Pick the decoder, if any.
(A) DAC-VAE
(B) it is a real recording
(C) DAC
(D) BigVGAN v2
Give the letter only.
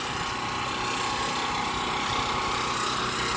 B